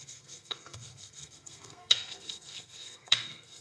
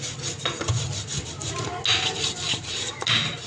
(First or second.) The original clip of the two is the second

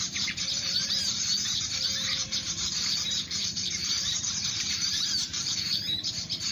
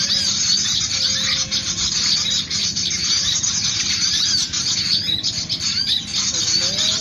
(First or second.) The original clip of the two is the second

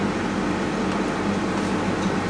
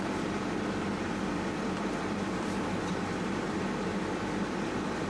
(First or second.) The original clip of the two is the first